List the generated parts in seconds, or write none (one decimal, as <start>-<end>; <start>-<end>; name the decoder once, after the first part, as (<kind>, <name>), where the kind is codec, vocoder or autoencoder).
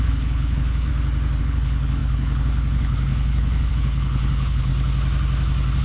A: 0.0-0.9 (codec, HILCodec); 1.4-4.7